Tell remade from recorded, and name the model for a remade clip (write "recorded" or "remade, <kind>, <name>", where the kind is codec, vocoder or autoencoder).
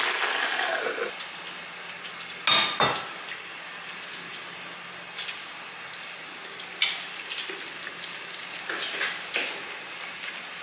recorded